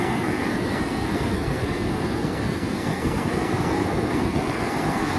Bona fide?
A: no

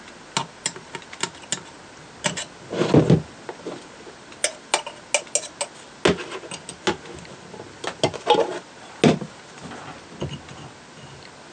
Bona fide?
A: yes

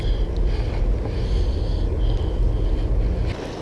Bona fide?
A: yes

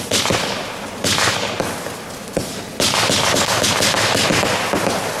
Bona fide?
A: yes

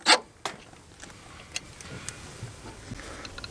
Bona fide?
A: yes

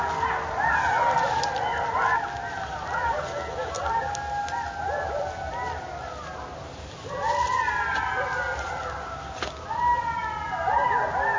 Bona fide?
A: yes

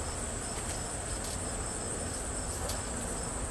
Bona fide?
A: yes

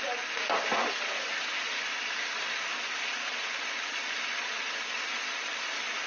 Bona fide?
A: yes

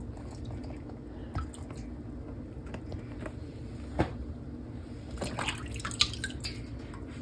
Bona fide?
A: yes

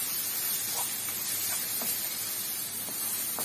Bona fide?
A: yes